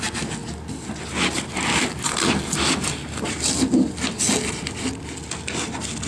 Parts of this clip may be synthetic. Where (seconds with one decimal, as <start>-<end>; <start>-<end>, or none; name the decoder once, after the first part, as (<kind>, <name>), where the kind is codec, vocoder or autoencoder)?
none